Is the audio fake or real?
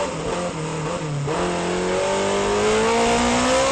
real